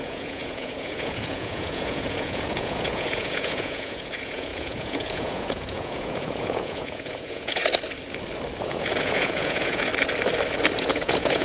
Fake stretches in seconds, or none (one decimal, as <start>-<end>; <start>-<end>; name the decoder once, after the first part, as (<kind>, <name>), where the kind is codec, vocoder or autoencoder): 0.0-7.6 (vocoder, Vocos); 8.6-9.9; 10.8-11.4